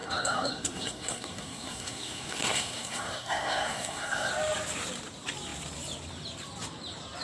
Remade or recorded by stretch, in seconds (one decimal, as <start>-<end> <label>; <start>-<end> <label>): 0.0-4.3 remade; 4.3-7.2 recorded